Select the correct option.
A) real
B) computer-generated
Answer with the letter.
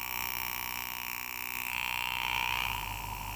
A